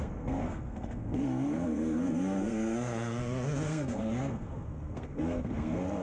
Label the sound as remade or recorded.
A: remade